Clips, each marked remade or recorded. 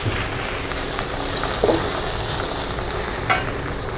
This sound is recorded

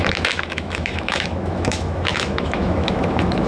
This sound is remade